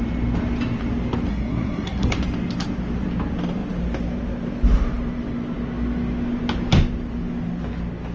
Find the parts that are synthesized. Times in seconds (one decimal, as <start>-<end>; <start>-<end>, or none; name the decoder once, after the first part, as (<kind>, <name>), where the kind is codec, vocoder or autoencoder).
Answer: 1.3-2.1 (codec, SNAC)